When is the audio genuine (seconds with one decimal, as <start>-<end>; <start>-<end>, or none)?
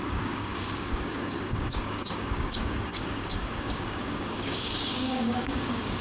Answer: none